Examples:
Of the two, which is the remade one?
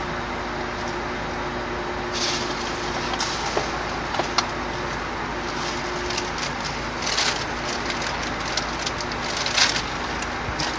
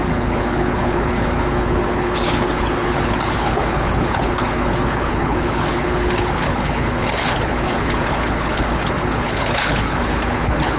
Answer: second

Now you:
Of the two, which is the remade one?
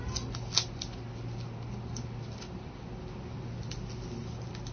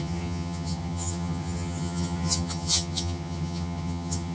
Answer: second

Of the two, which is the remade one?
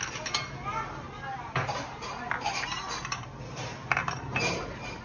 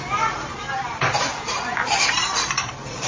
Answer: second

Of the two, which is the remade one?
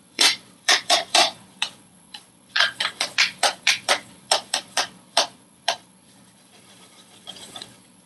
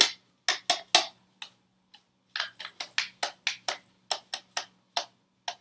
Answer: first